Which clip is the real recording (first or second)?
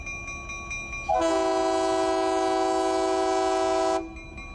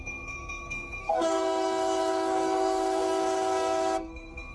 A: first